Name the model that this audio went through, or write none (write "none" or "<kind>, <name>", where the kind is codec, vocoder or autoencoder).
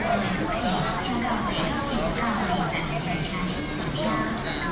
none